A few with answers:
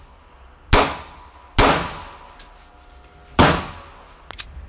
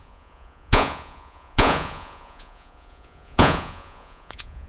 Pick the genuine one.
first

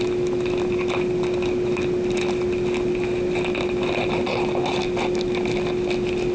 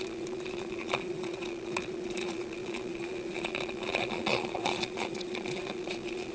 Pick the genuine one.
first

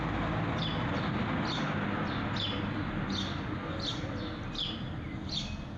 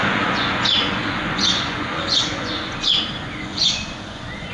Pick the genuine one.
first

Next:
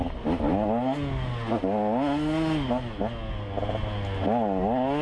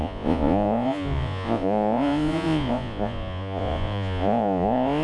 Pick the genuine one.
first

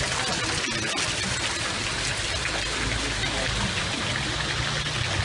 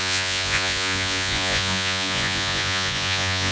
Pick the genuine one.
first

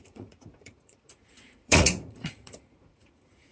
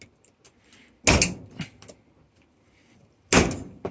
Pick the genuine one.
second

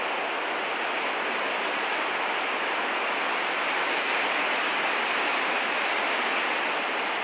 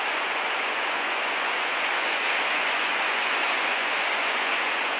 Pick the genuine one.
first